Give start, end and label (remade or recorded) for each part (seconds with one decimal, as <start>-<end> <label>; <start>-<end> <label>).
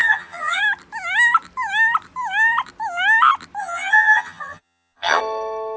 0.0-0.6 remade; 0.6-3.6 recorded; 3.6-5.2 remade; 5.2-5.8 recorded